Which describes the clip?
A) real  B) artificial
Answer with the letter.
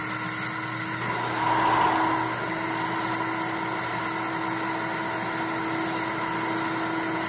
A